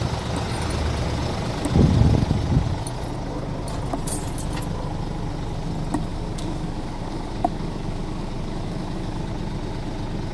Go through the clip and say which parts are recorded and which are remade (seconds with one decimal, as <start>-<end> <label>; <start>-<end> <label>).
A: 0.0-6.1 recorded; 6.1-9.3 remade; 9.3-10.3 recorded